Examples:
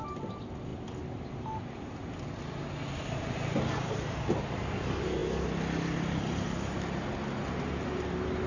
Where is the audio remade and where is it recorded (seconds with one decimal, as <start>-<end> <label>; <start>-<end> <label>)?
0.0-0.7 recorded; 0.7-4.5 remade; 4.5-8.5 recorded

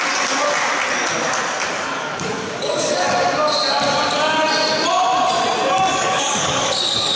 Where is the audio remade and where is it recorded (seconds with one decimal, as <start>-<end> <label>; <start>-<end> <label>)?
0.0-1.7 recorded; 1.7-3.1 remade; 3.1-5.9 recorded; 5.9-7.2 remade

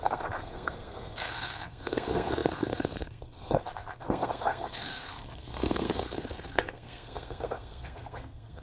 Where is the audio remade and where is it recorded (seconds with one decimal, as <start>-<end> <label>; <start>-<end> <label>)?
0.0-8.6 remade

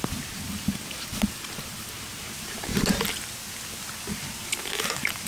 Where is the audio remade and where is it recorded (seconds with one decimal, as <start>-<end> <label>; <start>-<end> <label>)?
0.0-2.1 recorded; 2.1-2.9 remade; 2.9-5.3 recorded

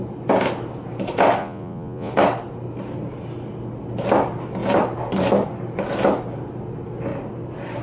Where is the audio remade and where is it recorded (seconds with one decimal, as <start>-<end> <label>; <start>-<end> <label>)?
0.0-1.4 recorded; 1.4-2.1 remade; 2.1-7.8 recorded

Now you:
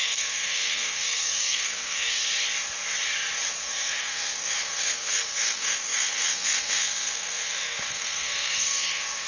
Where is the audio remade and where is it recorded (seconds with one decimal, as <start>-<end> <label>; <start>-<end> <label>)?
0.0-2.2 remade; 2.2-3.6 recorded; 3.6-9.3 remade